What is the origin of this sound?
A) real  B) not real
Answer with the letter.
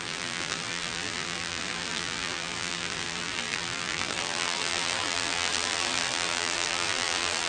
B